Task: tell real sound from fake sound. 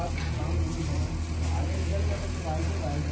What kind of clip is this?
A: real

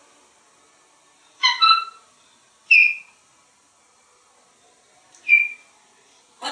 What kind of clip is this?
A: real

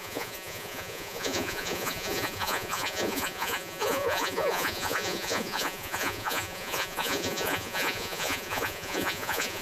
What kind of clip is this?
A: fake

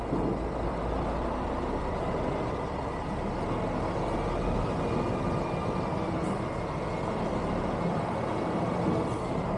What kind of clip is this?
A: real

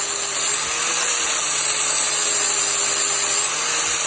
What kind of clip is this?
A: real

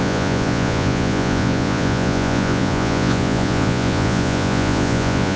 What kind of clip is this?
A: fake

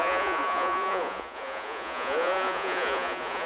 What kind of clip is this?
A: fake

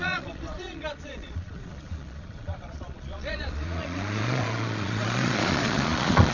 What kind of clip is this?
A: fake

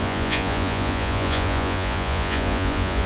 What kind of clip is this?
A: fake